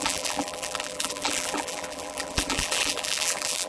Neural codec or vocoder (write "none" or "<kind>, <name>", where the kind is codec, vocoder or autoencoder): vocoder, BigVGAN v2